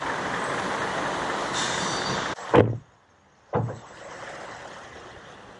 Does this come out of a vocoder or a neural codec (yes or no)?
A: no